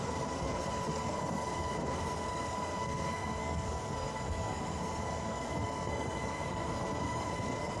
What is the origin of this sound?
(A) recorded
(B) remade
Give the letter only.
B